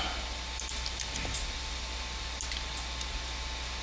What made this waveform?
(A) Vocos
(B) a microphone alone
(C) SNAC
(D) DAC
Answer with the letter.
B